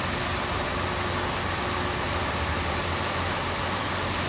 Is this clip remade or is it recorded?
recorded